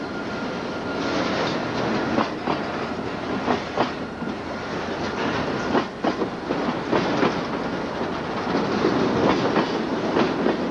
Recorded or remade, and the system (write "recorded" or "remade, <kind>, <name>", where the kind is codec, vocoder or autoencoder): recorded